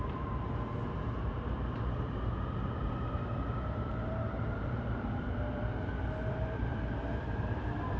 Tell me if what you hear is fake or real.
fake